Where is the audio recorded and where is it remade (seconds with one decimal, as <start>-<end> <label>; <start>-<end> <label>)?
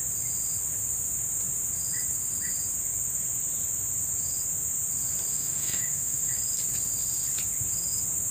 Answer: 0.0-5.3 recorded; 5.3-6.3 remade; 6.3-8.3 recorded